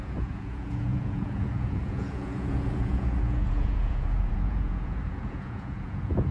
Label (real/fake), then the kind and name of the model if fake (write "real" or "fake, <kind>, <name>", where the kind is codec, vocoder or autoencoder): fake, vocoder, Vocos